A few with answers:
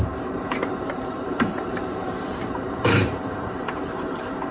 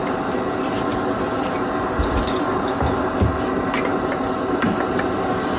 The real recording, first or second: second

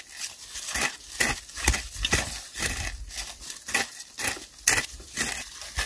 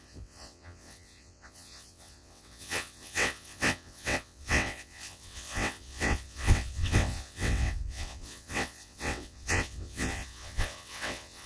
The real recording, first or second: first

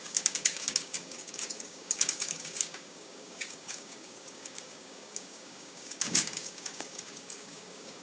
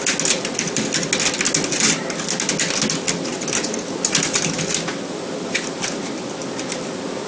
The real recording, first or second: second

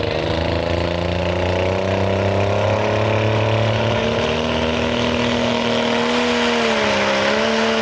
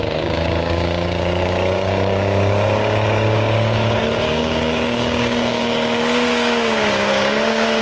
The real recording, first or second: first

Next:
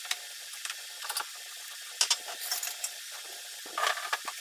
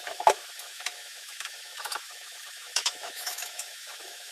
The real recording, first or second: first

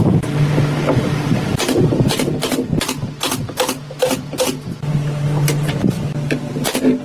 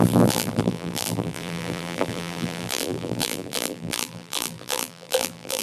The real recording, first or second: first